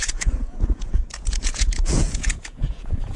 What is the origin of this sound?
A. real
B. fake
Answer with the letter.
B